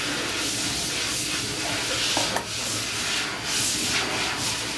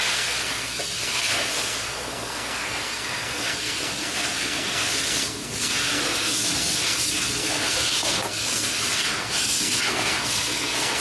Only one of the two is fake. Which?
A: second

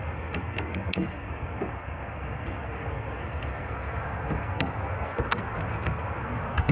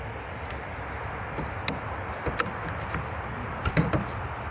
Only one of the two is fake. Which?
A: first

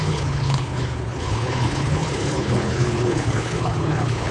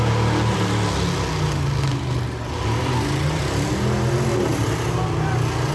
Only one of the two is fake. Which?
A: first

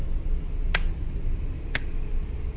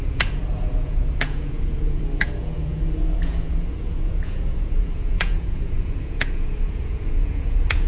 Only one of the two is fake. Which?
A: second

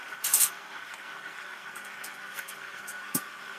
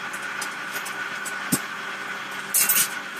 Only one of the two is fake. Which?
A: first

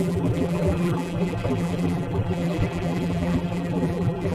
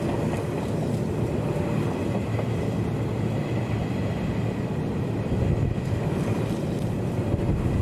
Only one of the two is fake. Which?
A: first